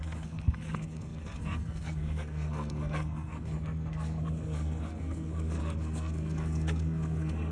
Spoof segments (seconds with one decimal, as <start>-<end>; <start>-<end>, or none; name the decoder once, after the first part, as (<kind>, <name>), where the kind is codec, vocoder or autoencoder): 0.0-7.5 (codec, SNAC)